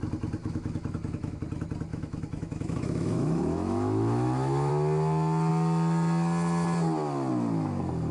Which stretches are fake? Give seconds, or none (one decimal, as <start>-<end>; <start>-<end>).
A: 0.4-1.4; 1.9-4.7

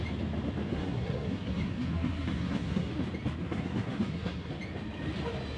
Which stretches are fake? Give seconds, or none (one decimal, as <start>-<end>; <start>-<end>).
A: 0.7-2.9; 3.4-4.5